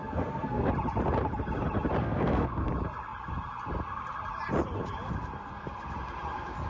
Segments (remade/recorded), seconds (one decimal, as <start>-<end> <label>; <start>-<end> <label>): 0.0-0.7 remade; 0.7-2.0 recorded; 2.0-2.7 remade; 2.7-6.7 recorded